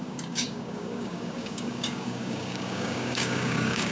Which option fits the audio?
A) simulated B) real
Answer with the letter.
A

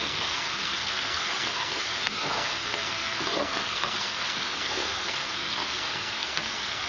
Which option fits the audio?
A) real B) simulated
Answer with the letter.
B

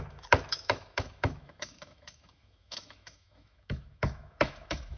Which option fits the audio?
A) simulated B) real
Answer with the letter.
A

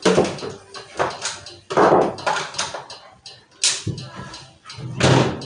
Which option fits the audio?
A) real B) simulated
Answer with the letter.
A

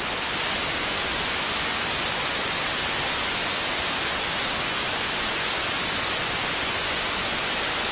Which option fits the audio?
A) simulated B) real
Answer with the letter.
A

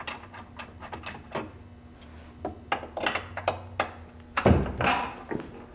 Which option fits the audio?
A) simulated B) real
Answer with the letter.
B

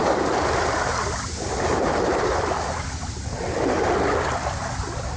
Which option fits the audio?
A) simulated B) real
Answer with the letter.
B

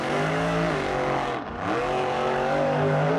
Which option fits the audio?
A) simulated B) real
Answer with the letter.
A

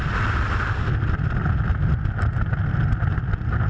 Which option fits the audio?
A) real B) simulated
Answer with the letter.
A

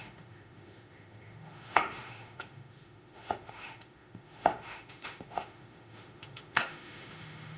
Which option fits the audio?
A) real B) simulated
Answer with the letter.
B